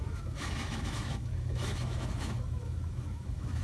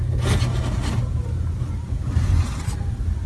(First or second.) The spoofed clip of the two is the first